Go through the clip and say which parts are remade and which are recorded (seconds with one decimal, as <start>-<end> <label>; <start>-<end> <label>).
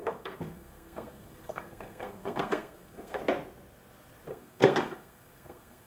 0.0-3.2 remade; 3.2-4.3 recorded; 4.3-5.9 remade